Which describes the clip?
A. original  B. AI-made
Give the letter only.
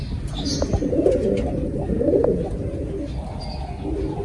A